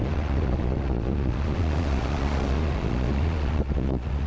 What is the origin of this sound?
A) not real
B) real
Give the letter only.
A